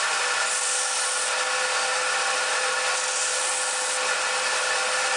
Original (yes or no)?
yes